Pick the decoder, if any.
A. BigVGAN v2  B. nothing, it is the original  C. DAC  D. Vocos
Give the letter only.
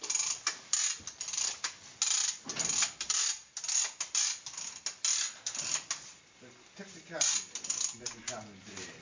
B